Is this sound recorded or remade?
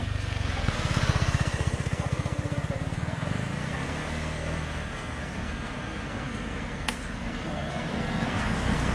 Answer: remade